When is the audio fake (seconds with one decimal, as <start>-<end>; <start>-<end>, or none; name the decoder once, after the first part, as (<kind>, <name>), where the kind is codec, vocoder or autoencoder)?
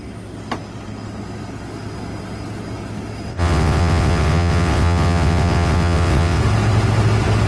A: 3.3-6.4 (vocoder, WaveNeXt)